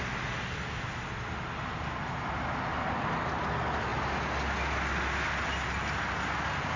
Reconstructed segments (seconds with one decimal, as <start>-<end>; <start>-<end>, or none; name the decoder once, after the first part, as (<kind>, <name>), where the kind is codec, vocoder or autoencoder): none